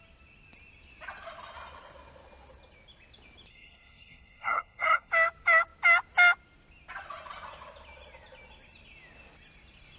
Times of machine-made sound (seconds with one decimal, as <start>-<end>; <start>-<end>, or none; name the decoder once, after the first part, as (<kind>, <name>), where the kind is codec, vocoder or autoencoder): 3.5-5.1 (codec, SNAC)